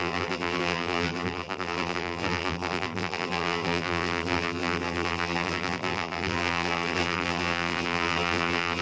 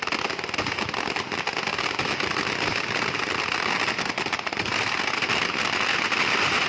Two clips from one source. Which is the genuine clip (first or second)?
second